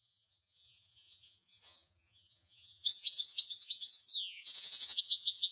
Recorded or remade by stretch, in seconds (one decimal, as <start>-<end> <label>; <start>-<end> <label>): 0.0-5.5 remade